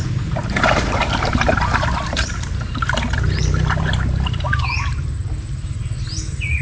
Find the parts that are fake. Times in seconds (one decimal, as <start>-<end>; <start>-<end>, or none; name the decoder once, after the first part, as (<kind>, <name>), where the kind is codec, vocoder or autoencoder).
0.4-3.8 (vocoder, BigVGAN v2); 5.2-5.8